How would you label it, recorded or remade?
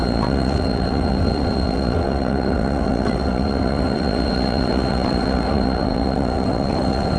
remade